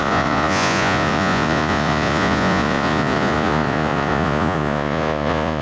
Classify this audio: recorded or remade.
remade